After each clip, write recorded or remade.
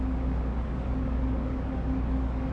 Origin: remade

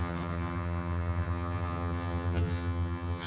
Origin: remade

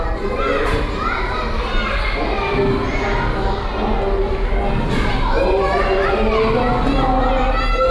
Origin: recorded